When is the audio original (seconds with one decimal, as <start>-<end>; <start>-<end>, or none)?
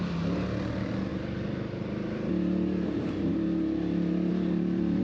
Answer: 0.0-1.1; 3.3-4.3